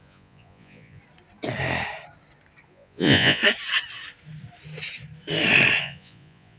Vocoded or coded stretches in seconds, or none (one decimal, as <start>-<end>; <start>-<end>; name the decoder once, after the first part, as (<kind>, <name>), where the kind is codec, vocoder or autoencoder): 0.0-1.0 (vocoder, Vocos); 2.7-3.4; 5.8-6.6